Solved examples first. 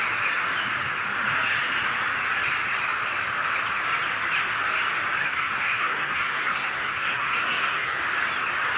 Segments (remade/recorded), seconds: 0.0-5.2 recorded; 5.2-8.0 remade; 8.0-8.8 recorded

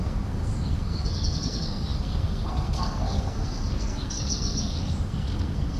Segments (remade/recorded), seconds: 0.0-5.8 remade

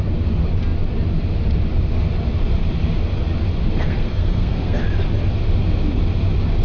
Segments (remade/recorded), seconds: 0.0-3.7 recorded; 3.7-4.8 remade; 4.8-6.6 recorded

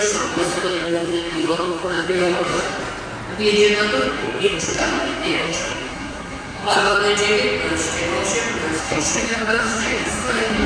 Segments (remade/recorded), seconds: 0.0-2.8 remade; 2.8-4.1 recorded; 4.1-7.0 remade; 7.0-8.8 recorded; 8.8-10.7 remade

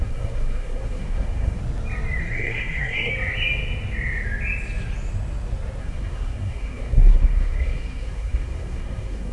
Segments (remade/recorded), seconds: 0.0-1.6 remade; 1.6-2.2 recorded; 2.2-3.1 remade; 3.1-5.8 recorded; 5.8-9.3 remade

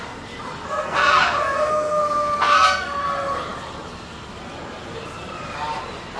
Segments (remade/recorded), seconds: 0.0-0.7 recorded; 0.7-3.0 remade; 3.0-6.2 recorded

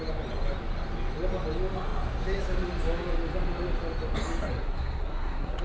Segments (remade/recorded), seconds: 0.0-4.5 recorded; 4.5-5.6 remade

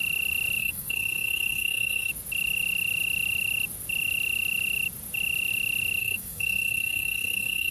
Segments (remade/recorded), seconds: 0.0-0.6 recorded; 0.6-2.1 remade; 2.1-6.0 recorded; 6.0-7.7 remade